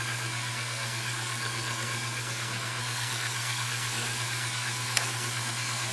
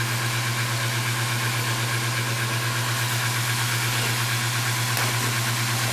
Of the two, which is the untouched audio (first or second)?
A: second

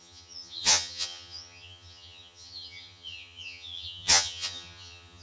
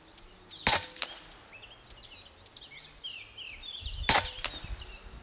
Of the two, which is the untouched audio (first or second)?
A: second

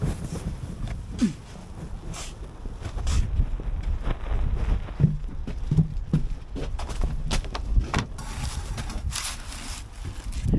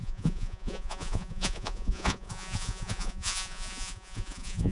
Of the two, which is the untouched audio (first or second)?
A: first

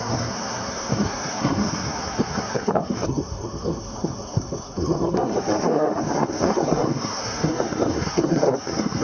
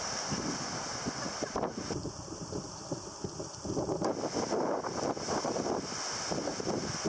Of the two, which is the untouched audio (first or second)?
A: second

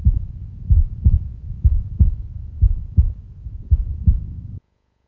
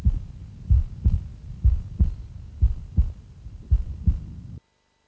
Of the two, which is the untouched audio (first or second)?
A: second